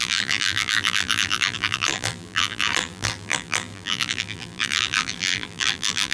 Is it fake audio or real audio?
fake